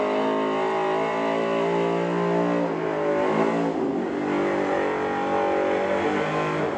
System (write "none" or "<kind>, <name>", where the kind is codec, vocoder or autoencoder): none